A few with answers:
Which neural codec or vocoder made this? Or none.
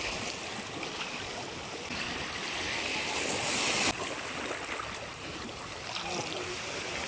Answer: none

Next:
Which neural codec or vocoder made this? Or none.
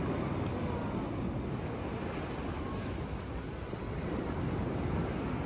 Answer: none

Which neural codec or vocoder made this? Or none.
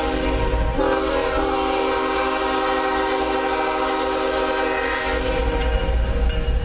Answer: none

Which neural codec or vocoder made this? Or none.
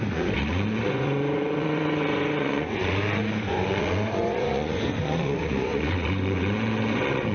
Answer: vocoder, Vocos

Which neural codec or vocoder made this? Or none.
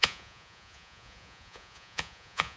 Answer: vocoder, Vocos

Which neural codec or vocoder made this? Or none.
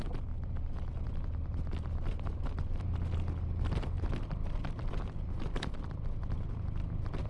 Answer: none